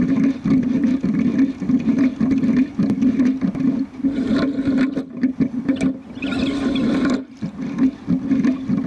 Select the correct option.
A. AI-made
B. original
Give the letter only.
B